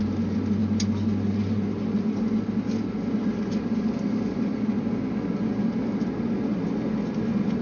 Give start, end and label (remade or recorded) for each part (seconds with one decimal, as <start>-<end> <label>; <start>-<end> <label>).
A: 0.0-7.6 recorded